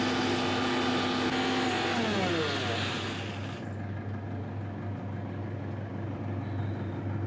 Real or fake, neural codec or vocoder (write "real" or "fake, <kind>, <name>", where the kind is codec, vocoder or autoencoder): real